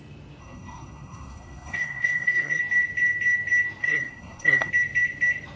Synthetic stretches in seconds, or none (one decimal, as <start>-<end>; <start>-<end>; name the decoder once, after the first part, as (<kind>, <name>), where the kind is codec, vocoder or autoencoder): 0.4-2.6 (codec, SNAC); 3.8-4.7